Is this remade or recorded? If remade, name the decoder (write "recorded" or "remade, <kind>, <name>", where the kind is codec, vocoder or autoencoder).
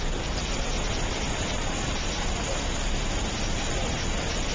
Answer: recorded